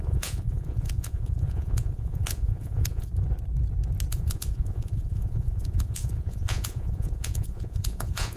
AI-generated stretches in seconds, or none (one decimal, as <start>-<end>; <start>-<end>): 0.0-3.1; 4.1-8.4